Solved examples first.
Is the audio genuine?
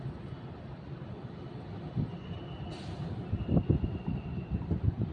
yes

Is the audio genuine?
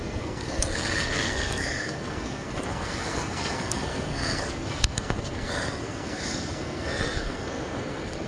no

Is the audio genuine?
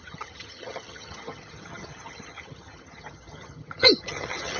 no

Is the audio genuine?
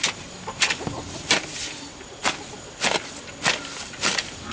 yes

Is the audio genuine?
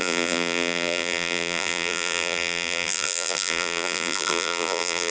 no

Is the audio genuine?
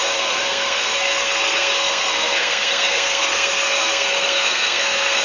no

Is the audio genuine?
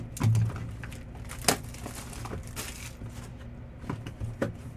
yes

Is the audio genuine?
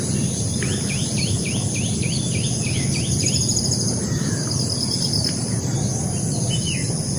no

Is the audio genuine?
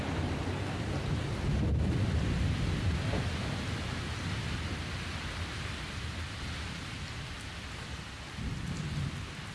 yes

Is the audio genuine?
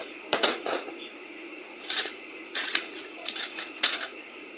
no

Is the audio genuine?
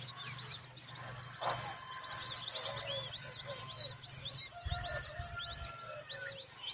yes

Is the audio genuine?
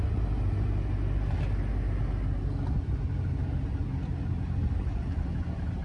yes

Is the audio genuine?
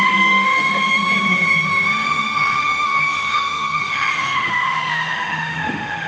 no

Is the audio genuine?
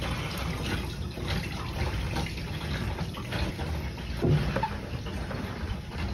yes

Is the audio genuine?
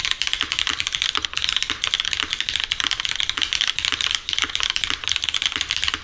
yes